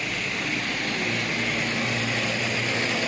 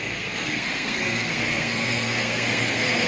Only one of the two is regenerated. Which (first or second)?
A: second